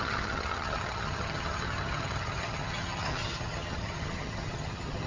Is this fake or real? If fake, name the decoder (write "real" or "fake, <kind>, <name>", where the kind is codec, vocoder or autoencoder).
fake, vocoder, HiFi-GAN